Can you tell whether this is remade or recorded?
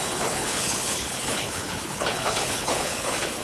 remade